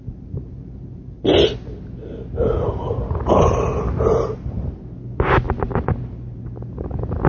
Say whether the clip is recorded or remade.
recorded